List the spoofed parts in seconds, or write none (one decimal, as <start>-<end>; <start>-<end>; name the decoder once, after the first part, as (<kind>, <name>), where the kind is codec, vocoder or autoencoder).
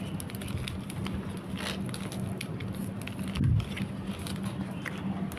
none